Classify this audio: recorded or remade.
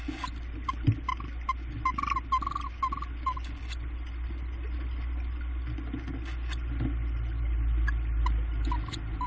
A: recorded